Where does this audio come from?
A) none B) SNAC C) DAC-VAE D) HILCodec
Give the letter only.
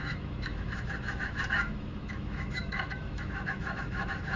C